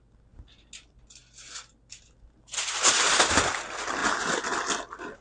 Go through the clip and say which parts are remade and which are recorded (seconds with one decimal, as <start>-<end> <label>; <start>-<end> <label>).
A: 0.0-5.2 recorded